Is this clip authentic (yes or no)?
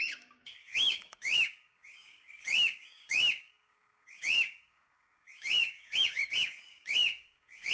no